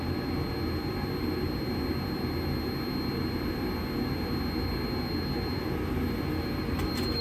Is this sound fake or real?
real